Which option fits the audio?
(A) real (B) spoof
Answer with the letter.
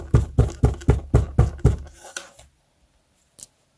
A